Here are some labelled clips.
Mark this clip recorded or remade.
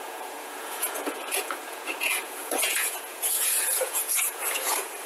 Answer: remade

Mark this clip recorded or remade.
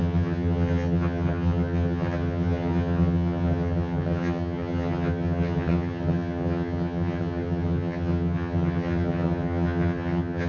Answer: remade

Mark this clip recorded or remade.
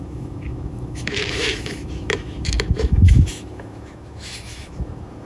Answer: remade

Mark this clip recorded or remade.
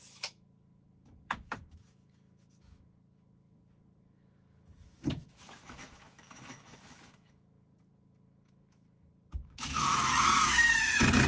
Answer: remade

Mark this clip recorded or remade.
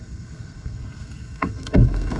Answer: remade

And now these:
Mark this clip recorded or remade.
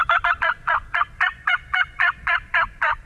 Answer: remade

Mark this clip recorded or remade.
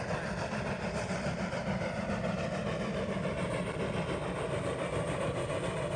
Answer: recorded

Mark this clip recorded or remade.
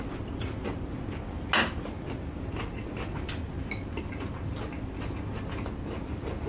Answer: recorded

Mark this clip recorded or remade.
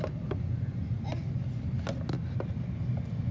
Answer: recorded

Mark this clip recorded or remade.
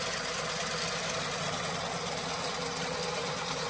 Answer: recorded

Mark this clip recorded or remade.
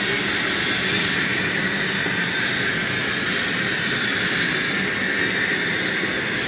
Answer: recorded